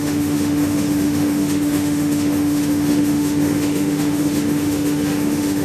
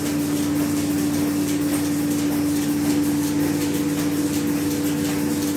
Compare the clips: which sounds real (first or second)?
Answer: second